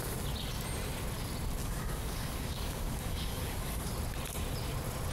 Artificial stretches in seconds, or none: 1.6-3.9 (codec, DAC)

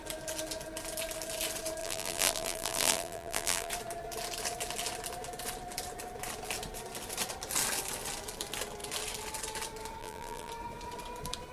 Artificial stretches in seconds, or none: 1.8-3.7 (vocoder, BigVGAN v2); 10.0-10.5

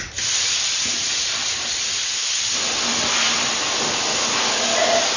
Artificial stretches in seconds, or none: none

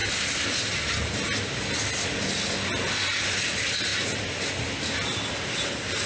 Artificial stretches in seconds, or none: none